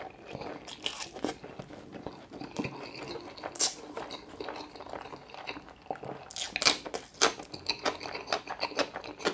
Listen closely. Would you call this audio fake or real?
real